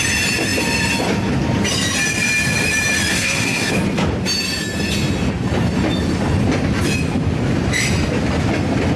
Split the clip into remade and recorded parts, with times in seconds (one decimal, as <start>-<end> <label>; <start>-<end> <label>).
0.0-3.1 recorded; 3.1-3.7 remade; 3.7-9.0 recorded